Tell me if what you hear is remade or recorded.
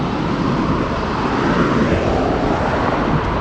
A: recorded